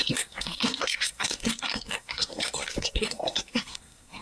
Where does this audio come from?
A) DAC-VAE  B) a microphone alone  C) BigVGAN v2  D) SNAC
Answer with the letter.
D